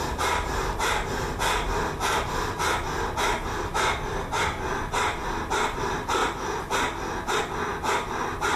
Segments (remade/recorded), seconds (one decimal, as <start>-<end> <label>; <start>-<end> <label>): 0.0-8.6 recorded